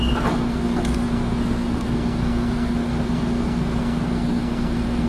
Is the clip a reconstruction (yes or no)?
yes